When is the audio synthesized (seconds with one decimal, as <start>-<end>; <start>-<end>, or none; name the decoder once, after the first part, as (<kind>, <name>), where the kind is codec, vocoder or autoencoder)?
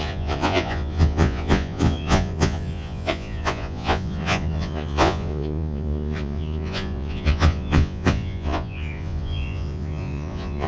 0.0-10.7 (vocoder, Vocos)